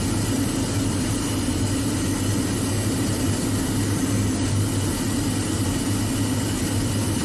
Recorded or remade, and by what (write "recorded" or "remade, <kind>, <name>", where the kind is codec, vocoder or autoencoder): recorded